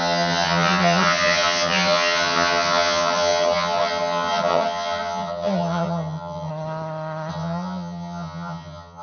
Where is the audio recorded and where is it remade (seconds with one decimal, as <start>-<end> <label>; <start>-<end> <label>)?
0.0-6.5 remade; 6.5-7.3 recorded; 7.3-9.0 remade